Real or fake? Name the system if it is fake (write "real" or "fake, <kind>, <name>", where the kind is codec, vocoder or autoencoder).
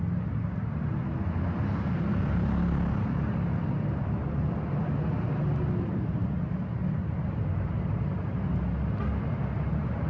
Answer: real